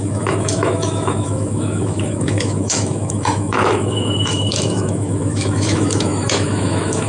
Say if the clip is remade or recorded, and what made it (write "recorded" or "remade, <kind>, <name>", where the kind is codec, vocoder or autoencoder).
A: remade, autoencoder, DAC-VAE